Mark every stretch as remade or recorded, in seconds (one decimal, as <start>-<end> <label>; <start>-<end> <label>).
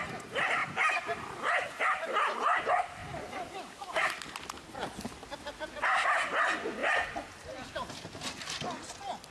0.0-3.0 recorded; 3.0-4.2 remade; 4.2-9.3 recorded